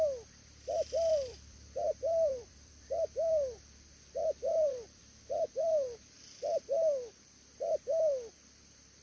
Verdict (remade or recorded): remade